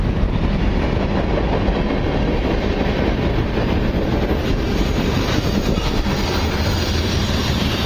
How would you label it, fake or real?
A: real